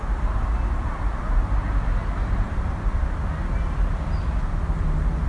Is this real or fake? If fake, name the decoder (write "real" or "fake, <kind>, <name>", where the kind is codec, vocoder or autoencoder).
real